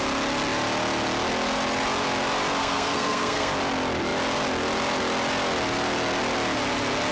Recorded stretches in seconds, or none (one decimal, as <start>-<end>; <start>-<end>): 0.0-2.6; 3.5-7.1